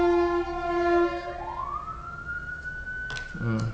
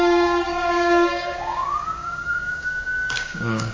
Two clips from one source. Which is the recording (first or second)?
first